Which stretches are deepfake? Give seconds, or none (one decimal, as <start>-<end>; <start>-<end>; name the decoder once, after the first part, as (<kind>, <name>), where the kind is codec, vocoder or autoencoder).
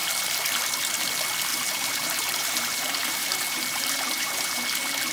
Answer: 1.5-4.6 (vocoder, BigVGAN v2)